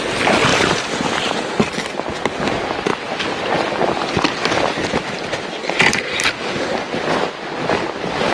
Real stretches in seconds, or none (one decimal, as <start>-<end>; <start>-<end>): 0.0-8.3